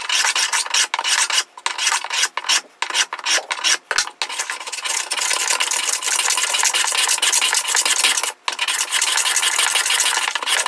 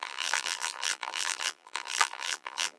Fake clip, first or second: second